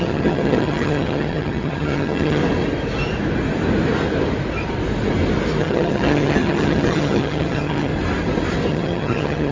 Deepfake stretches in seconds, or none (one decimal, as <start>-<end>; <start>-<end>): 0.0-2.4; 5.6-7.9; 8.7-9.5

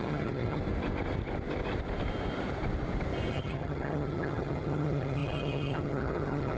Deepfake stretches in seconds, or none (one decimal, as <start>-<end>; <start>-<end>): 0.0-0.6; 3.3-6.6